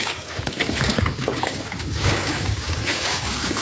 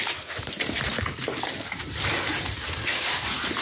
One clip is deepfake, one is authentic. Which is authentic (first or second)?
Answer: second